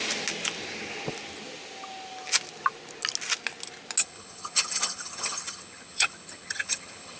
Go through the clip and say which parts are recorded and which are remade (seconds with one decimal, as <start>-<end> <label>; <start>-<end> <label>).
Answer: 0.0-4.0 recorded; 4.0-7.2 remade